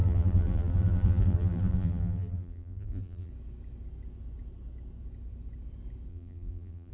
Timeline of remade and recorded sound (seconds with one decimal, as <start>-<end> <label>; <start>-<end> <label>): 0.0-3.3 remade; 3.3-6.1 recorded; 6.1-6.9 remade